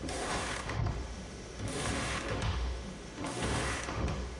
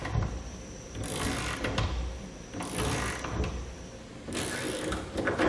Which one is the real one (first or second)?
second